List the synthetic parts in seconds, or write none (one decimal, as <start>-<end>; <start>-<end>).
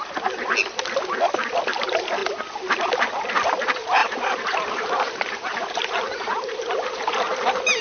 4.0-7.1